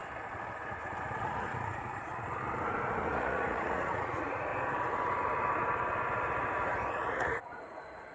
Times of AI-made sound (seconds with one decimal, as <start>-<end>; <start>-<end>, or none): 1.2-2.1; 3.1-4.5; 6.9-8.1